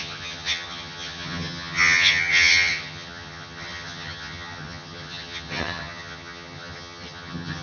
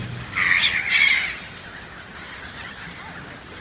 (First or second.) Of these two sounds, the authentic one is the second